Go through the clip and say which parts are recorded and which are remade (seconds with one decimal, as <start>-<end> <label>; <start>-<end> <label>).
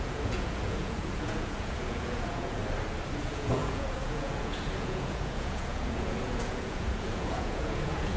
0.0-2.6 remade; 2.6-3.2 recorded; 3.2-8.2 remade